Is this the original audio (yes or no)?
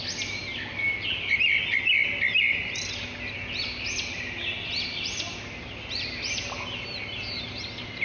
yes